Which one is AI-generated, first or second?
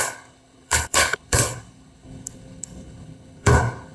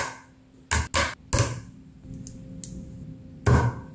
first